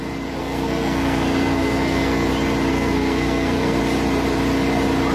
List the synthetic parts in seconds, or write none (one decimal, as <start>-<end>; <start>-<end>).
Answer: 0.4-2.3; 2.7-3.8